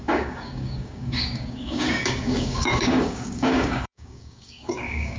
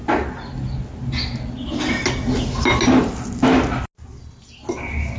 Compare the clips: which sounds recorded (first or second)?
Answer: second